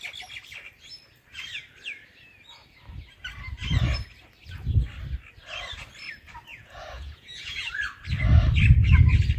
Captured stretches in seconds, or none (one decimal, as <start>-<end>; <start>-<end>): 0.0-6.5; 7.8-9.4